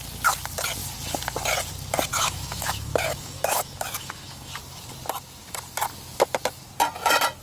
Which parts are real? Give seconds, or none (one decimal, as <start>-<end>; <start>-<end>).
0.0-2.1; 4.5-7.4